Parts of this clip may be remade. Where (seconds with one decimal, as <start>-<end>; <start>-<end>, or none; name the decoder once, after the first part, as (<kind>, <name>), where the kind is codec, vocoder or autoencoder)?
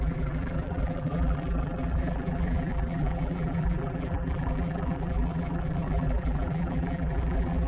0.0-7.7 (vocoder, BigVGAN v2)